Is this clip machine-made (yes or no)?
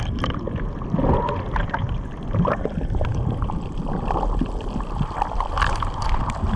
no